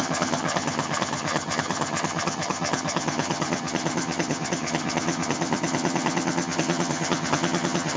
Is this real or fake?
fake